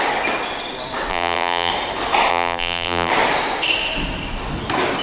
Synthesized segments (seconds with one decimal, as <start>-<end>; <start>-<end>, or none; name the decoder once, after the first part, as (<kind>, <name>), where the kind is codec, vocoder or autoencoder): 1.1-1.7 (vocoder, BigVGAN v2); 2.3-3.1